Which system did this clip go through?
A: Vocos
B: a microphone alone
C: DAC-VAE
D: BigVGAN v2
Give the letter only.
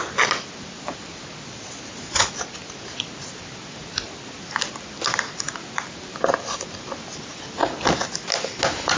B